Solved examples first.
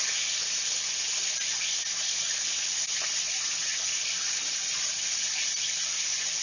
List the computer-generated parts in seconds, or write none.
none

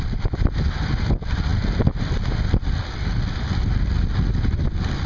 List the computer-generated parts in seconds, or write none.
none

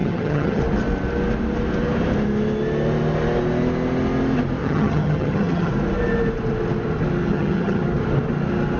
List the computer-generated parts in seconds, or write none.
0.0-0.6 (vocoder, HiFi-GAN); 4.6-5.7; 7.2-7.8

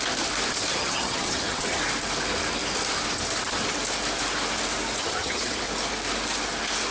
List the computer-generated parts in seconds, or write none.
0.7-1.8 (vocoder, HiFi-GAN); 5.0-5.6

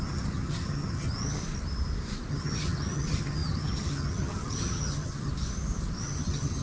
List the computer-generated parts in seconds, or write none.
0.0-1.4 (vocoder, HiFi-GAN); 2.3-5.3; 6.0-6.6

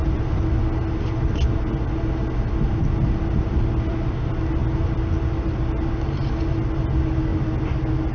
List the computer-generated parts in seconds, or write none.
none

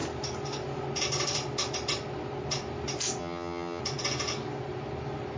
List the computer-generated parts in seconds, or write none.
3.2-3.8 (vocoder, HiFi-GAN)